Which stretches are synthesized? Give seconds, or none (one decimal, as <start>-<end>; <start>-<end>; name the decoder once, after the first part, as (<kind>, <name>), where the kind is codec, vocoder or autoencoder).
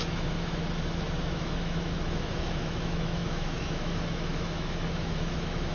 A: 0.0-0.6 (autoencoder, DAC-VAE); 1.2-5.7